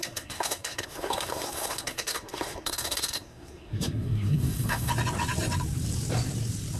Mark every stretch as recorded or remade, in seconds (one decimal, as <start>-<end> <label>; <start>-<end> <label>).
0.0-4.9 remade; 4.9-6.8 recorded